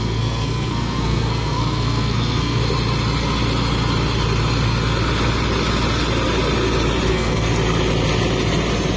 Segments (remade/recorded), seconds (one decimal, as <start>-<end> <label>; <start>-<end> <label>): 0.0-2.6 remade; 2.6-7.1 recorded; 7.1-7.5 remade; 7.5-9.0 recorded